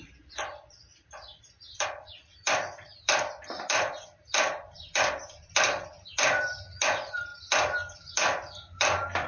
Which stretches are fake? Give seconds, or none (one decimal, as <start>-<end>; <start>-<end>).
0.0-9.3